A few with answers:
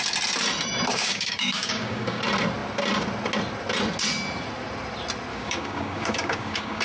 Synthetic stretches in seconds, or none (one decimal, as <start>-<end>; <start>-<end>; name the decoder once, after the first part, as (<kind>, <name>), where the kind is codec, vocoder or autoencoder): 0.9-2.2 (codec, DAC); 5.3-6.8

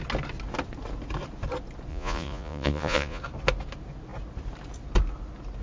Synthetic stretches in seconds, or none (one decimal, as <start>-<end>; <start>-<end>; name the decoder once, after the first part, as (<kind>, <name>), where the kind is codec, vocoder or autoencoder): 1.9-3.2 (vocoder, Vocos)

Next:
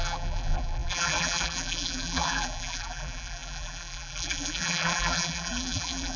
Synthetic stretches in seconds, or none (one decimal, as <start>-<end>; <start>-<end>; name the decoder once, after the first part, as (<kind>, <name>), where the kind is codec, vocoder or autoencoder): 0.0-6.2 (vocoder, BigVGAN v2)

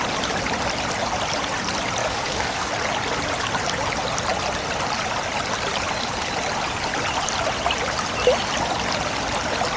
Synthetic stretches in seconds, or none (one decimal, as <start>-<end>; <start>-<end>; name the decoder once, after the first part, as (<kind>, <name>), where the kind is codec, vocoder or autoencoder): 2.0-2.7 (codec, DAC)

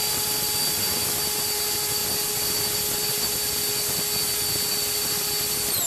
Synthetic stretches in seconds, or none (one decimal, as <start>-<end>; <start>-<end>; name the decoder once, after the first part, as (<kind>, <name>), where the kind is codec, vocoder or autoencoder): none

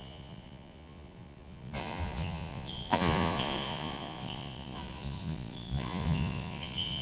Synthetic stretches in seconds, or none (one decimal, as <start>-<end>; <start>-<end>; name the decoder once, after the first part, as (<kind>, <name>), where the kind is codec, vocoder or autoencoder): 0.0-7.0 (vocoder, Vocos)